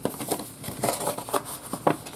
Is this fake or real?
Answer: real